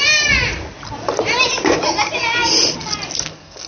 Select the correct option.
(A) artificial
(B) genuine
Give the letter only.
B